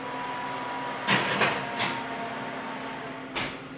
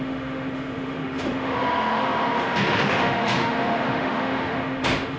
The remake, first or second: second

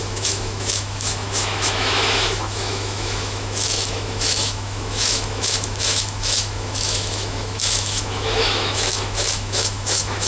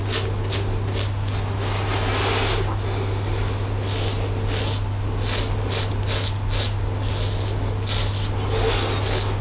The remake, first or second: first